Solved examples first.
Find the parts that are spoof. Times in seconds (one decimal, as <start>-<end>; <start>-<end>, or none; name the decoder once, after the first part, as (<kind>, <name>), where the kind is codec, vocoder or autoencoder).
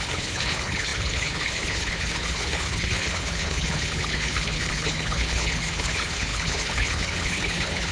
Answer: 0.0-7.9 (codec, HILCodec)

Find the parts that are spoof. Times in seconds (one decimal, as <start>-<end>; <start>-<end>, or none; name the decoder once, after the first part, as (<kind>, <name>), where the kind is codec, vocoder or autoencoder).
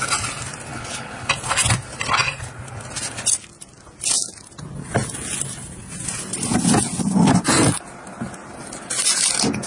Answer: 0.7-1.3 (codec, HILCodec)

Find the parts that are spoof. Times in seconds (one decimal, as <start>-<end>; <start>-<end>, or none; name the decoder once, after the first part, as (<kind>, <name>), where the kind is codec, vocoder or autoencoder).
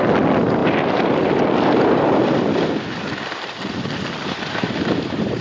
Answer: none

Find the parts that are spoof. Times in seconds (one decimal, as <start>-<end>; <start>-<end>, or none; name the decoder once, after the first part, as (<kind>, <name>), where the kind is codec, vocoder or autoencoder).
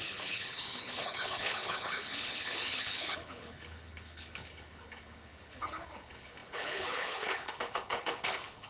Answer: 0.0-8.7 (codec, HILCodec)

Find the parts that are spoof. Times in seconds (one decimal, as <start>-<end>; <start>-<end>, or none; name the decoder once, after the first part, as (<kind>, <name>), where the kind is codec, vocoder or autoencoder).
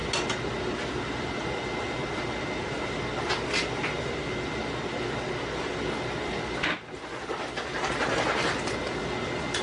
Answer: none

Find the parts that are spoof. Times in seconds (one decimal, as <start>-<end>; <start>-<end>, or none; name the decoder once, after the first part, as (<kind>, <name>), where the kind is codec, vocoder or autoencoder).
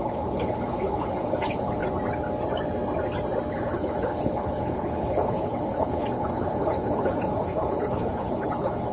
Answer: 0.0-1.8 (codec, HILCodec); 3.5-8.9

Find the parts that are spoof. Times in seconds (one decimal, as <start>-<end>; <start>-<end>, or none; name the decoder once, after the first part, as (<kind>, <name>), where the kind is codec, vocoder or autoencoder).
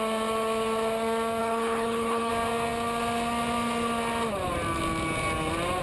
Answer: 1.4-2.3 (codec, HILCodec)